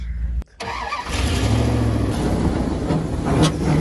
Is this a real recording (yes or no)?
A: yes